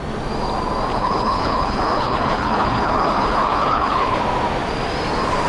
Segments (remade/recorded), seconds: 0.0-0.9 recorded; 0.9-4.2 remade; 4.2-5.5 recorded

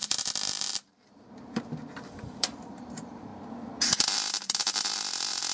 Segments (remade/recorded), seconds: 0.0-3.3 remade; 3.3-3.9 recorded; 3.9-5.5 remade

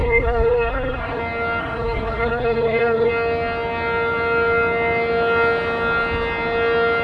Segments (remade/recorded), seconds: 0.0-1.2 remade; 1.2-1.6 recorded; 1.6-3.1 remade; 3.1-7.0 recorded

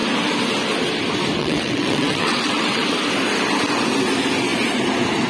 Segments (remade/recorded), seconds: 0.0-1.4 recorded; 1.4-3.0 remade; 3.0-5.3 recorded

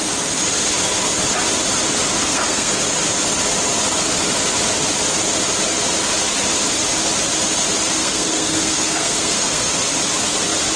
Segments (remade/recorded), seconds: 0.0-2.2 recorded; 2.2-2.7 remade; 2.7-8.0 recorded; 8.0-9.7 remade; 9.7-10.8 recorded